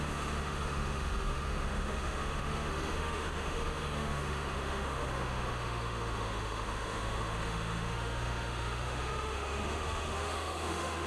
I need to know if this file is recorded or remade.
remade